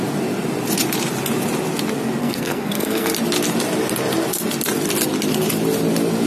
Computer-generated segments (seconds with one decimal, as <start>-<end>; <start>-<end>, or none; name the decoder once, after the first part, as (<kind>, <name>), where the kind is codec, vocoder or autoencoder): 2.2-3.1 (codec, SNAC)